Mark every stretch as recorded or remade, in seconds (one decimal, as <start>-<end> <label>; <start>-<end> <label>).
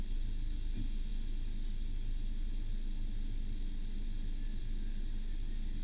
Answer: 0.0-5.8 recorded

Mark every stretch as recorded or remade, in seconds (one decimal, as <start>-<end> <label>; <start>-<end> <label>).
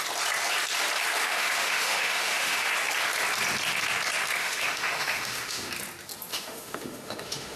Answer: 0.0-1.2 recorded; 1.2-2.7 remade; 2.7-4.4 recorded; 4.4-5.7 remade; 5.7-6.3 recorded; 6.3-7.6 remade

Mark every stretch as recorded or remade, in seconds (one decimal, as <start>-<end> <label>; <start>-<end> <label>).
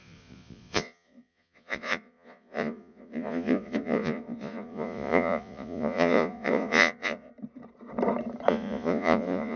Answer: 0.0-7.3 remade; 7.3-8.5 recorded; 8.5-9.6 remade